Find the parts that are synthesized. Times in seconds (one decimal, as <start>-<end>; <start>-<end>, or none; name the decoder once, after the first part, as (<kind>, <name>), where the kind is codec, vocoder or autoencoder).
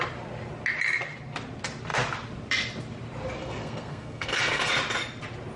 3.4-4.7 (codec, SNAC)